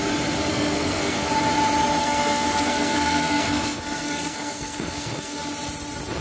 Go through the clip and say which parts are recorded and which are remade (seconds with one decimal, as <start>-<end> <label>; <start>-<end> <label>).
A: 0.0-0.5 recorded; 0.5-1.3 remade; 1.3-2.0 recorded; 2.0-5.4 remade; 5.4-6.2 recorded